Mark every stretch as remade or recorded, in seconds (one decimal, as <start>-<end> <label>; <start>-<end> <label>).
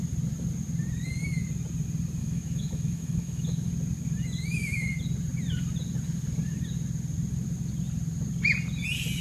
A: 0.0-2.2 recorded; 2.2-3.7 remade; 3.7-9.2 recorded